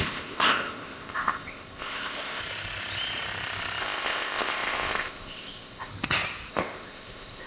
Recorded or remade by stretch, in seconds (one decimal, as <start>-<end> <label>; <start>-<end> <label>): 0.0-2.4 remade; 2.4-3.8 recorded; 3.8-5.9 remade; 5.9-6.5 recorded; 6.5-7.5 remade